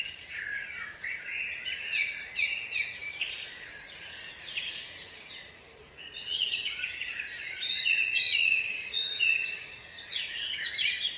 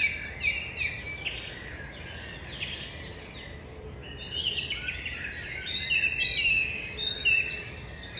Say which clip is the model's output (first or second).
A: first